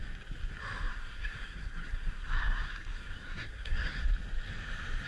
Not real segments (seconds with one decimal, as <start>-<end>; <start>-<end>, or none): 0.9-4.0